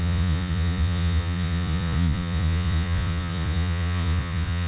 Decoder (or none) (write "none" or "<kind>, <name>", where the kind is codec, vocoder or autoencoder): vocoder, Vocos